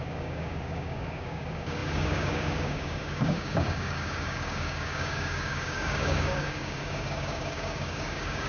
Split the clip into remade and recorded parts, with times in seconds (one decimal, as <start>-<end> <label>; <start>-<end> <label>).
0.0-8.5 remade

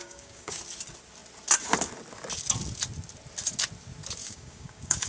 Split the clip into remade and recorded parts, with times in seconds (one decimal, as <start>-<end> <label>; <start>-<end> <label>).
0.0-0.6 remade; 0.6-4.2 recorded; 4.2-5.1 remade

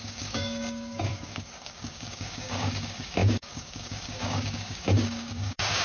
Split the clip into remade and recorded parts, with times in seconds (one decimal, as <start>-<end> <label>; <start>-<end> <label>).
0.0-5.8 remade

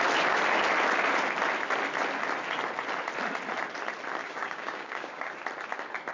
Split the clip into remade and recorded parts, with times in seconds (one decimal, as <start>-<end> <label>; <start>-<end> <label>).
0.0-4.2 recorded; 4.2-5.3 remade; 5.3-6.1 recorded

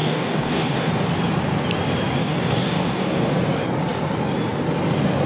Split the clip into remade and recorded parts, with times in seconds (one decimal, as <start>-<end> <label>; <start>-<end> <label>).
0.0-0.9 remade; 0.9-2.2 recorded; 2.2-3.3 remade; 3.3-5.3 recorded

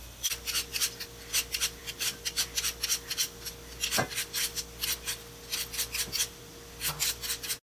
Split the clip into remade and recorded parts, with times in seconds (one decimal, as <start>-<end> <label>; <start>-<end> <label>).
0.0-7.6 recorded

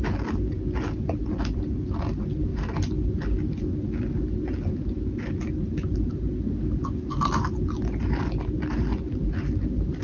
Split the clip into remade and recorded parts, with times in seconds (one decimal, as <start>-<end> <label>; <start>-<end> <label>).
0.0-10.0 recorded